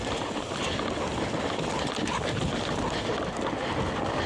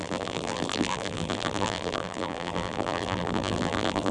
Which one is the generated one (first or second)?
second